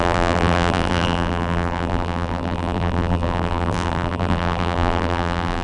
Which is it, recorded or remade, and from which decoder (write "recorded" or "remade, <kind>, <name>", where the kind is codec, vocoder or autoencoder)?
remade, vocoder, BigVGAN v2